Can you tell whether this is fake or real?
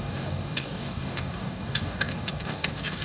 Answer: fake